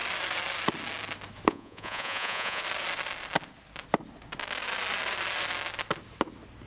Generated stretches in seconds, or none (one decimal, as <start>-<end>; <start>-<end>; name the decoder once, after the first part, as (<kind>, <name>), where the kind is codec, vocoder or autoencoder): 1.5-2.6 (vocoder, Vocos)